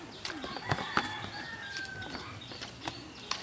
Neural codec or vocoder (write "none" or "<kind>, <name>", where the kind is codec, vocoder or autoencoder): none